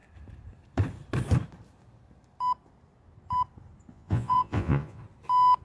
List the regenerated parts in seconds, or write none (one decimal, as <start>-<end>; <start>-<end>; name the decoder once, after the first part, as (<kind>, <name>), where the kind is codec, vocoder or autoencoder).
3.9-5.0 (vocoder, Vocos)